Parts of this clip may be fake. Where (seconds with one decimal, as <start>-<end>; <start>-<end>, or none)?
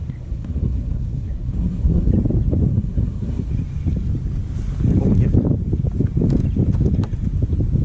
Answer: 0.0-2.1; 2.7-3.5